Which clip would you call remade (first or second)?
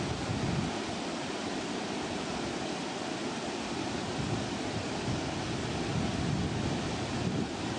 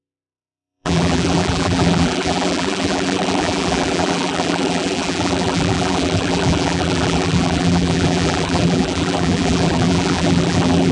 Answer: second